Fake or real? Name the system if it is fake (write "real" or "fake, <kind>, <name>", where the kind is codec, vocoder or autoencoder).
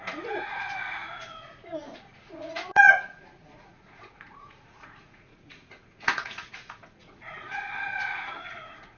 fake, vocoder, Vocos